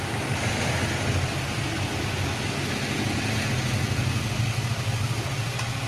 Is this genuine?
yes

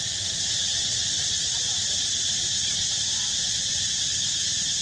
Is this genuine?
no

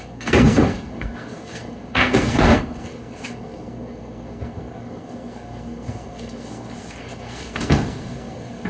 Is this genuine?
no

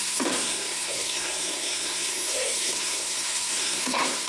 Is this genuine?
no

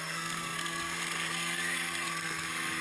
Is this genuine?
no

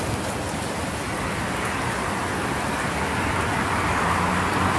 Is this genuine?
yes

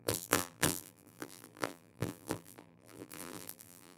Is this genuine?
no